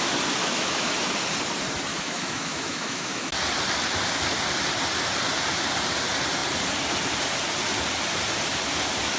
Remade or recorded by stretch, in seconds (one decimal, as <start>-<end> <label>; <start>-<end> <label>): 0.0-0.4 recorded; 0.4-0.9 remade; 0.9-1.9 recorded; 1.9-3.3 remade; 3.3-9.2 recorded